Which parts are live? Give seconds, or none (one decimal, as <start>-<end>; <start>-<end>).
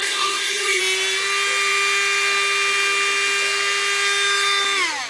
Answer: 0.8-5.1